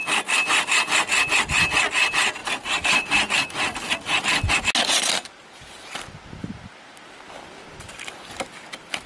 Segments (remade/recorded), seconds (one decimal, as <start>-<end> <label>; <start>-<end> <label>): 0.0-2.4 recorded; 2.4-4.5 remade; 4.5-9.1 recorded